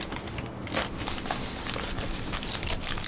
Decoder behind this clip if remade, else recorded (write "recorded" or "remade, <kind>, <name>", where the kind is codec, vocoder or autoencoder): remade, vocoder, BigVGAN v2